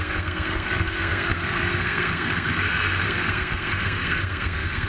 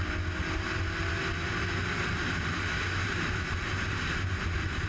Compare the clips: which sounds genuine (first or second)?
second